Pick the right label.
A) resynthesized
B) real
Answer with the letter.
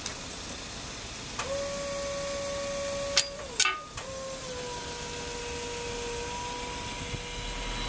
B